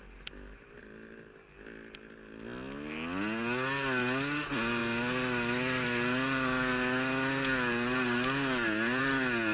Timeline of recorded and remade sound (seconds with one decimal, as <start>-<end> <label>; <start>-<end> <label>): 0.0-9.5 recorded

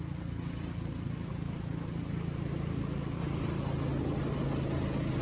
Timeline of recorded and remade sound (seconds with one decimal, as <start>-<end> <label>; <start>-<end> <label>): 0.0-5.2 recorded

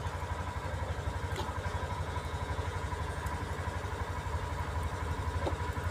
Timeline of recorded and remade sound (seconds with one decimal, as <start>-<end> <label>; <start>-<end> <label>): 0.0-1.7 recorded; 1.7-3.2 remade; 3.2-5.9 recorded

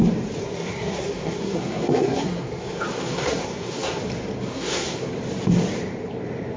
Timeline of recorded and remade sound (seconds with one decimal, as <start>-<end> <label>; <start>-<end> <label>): 0.0-0.4 recorded; 0.4-4.0 remade; 4.0-4.5 recorded; 4.5-5.1 remade; 5.1-6.6 recorded

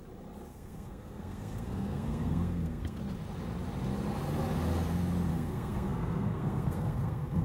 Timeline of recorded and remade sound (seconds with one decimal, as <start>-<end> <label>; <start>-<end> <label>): 0.0-0.5 recorded; 0.5-3.0 remade; 3.0-5.3 recorded; 5.3-7.4 remade

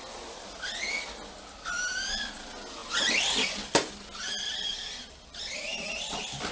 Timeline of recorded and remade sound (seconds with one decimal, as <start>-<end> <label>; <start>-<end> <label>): 0.0-6.5 recorded

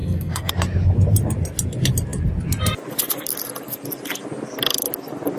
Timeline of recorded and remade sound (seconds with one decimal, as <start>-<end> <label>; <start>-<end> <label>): 0.0-0.5 remade; 0.5-5.4 recorded